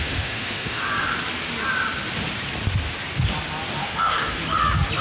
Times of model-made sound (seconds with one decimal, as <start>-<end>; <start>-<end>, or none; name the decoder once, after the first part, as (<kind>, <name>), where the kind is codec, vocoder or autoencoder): 0.0-0.8 (autoencoder, DAC-VAE); 3.8-4.4